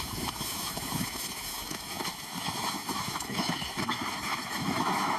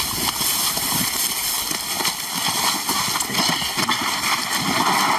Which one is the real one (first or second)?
second